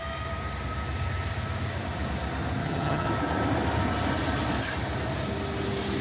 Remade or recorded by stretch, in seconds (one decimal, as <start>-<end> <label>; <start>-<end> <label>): 0.0-2.6 recorded; 2.6-3.1 remade; 3.1-6.0 recorded